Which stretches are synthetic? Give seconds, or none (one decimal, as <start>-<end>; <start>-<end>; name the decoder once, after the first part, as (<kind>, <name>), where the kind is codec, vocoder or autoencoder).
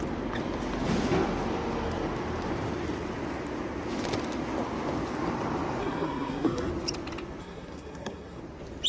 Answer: 5.8-6.7 (codec, SNAC); 7.4-8.4